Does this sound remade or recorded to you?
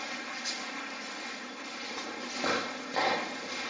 recorded